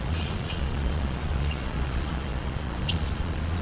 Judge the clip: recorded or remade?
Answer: remade